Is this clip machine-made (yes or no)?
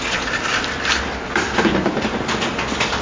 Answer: yes